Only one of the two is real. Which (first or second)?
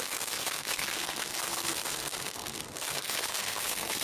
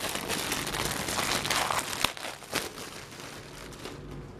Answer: second